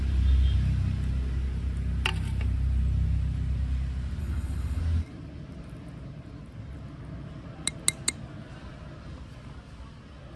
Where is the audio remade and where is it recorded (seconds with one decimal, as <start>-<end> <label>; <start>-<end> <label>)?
0.0-4.2 recorded; 4.2-4.8 remade; 4.8-10.4 recorded